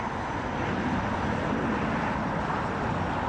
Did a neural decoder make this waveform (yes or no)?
no